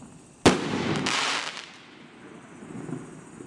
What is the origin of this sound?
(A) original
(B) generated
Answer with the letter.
A